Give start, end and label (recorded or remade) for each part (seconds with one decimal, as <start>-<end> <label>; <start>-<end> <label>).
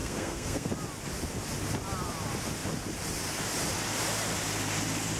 0.0-0.7 remade; 0.7-5.2 recorded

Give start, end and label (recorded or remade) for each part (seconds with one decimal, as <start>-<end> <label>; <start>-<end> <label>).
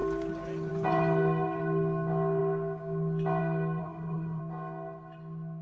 0.0-3.8 recorded; 3.8-4.4 remade; 4.4-5.6 recorded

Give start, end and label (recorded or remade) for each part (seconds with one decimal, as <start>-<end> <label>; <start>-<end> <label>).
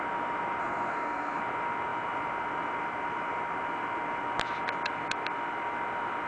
0.0-0.6 recorded; 0.6-1.4 remade; 1.4-6.3 recorded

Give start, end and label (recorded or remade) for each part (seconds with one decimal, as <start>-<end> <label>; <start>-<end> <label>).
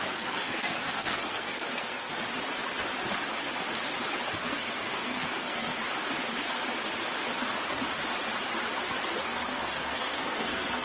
0.0-2.1 remade; 2.1-4.3 recorded; 4.3-5.7 remade; 5.7-9.2 recorded; 9.2-10.8 remade